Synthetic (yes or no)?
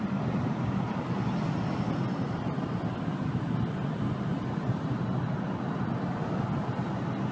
no